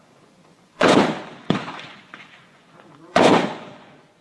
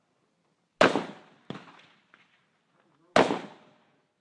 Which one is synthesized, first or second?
first